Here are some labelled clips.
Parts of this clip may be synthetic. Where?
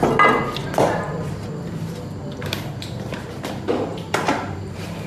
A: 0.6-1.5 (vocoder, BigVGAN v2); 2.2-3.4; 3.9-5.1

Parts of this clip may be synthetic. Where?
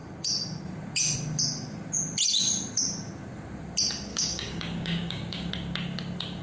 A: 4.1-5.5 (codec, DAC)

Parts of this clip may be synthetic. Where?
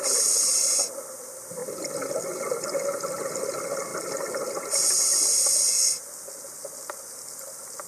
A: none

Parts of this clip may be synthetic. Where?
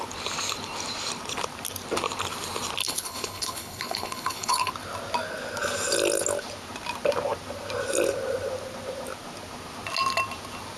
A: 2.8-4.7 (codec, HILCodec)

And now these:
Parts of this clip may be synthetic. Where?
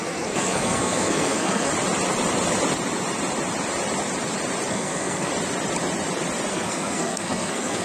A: 0.0-1.7 (codec, SNAC); 4.7-5.3; 6.5-7.8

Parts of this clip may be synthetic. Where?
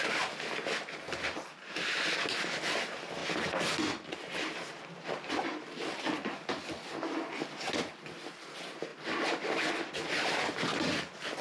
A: none